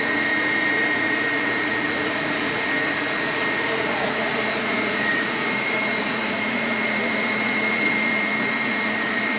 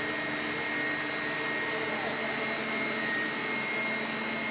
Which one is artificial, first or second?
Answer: first